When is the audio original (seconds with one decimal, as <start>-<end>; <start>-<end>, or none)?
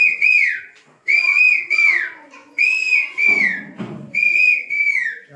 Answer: none